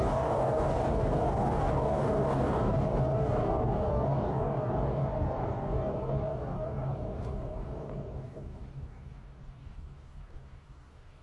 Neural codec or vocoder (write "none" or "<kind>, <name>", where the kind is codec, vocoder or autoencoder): codec, DAC